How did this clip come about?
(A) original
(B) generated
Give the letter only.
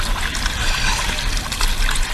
A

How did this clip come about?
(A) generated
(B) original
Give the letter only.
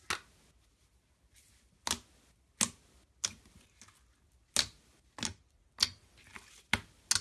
B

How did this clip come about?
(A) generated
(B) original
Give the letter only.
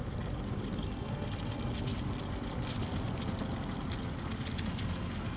B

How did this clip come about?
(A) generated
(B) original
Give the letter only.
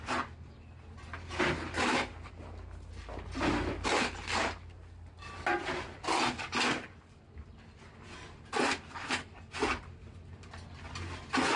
B